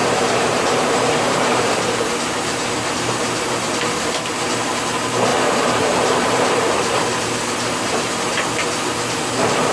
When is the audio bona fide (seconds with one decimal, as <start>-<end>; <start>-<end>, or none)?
4.6-5.3; 8.1-9.7